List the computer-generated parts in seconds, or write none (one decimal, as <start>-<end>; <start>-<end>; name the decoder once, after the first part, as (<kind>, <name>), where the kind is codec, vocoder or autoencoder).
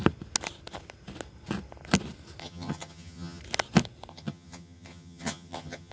2.4-3.4 (vocoder, HiFi-GAN); 4.1-5.9